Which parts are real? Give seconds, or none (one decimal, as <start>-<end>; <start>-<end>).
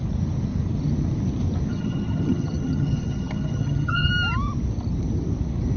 0.0-1.7; 4.1-5.8